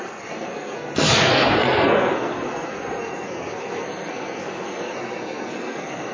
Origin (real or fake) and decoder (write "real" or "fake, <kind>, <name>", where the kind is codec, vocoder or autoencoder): fake, codec, SNAC